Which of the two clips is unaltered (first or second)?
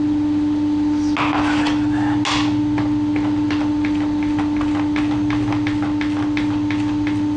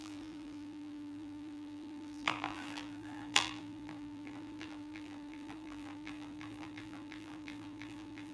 first